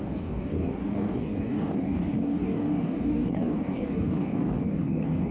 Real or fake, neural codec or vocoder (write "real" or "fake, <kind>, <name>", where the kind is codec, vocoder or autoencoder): fake, codec, DAC